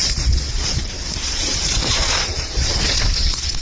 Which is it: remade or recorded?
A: remade